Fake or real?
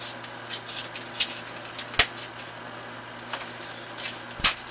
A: real